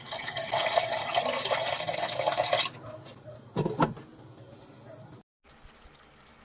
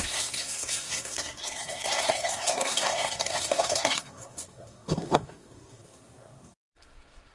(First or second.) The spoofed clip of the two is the second